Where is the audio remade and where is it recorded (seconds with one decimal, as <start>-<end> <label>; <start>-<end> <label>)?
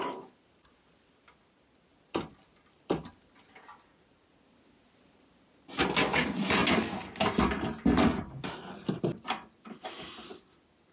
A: 0.0-6.6 remade; 6.6-9.0 recorded; 9.0-10.9 remade